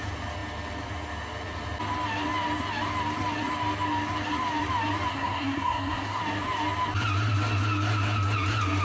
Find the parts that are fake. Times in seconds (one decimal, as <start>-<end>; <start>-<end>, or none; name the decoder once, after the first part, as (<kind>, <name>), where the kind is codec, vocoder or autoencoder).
5.1-6.2 (codec, SNAC)